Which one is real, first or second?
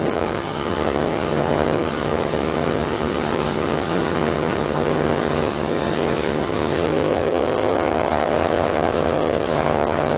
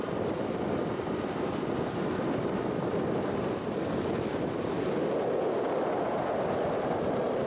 second